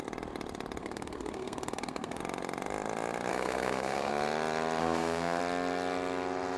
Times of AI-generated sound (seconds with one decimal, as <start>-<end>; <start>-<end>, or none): 0.8-2.2; 3.3-4.1; 4.8-5.4